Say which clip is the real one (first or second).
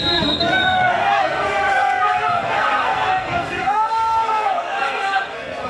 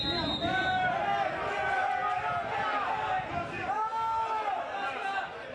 second